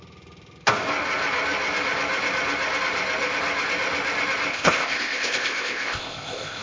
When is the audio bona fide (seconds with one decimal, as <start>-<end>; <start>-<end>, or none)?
0.0-4.5